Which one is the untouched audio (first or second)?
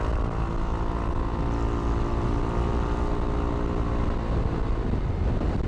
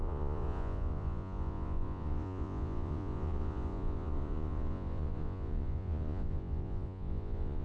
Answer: first